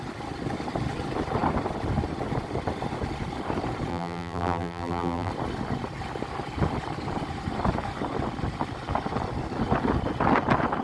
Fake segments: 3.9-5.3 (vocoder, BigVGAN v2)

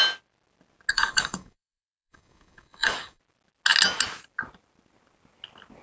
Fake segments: 0.9-3.2 (codec, DAC)

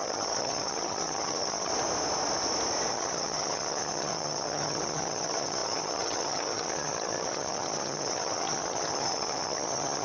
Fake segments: 0.0-1.7 (vocoder, HiFi-GAN); 2.9-10.0

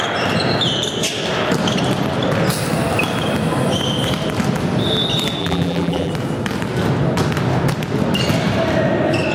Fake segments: 5.4-6.1 (vocoder, BigVGAN v2)

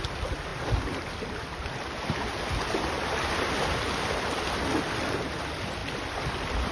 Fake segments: none

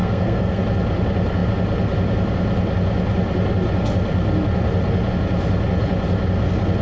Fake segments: 0.0-0.6 (codec, SNAC)

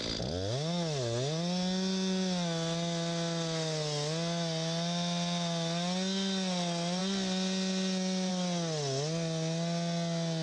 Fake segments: none